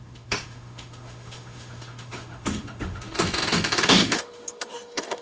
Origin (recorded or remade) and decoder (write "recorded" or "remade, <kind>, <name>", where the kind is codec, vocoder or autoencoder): remade, autoencoder, DAC-VAE